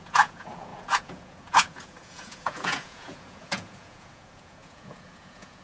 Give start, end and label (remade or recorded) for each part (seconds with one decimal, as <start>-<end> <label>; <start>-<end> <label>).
0.0-5.6 remade